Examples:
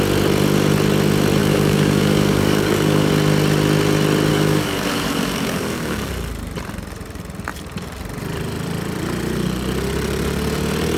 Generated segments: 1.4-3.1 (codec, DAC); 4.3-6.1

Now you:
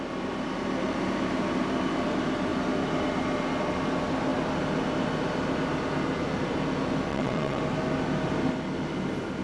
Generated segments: 7.1-7.6 (vocoder, WaveNeXt)

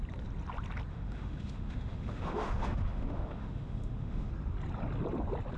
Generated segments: 0.9-4.3 (autoencoder, DAC-VAE)

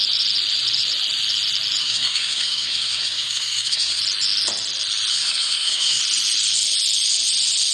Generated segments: 1.8-4.0 (codec, SNAC); 5.1-6.0

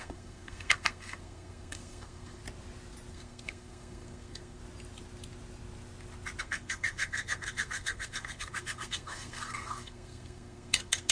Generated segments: 0.0-2.4 (codec, SNAC); 3.1-4.6; 6.4-11.1